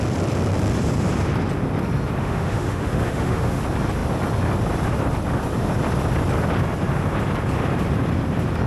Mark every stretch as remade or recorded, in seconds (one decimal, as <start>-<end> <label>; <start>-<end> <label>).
0.0-2.2 recorded; 2.2-3.6 remade; 3.6-8.7 recorded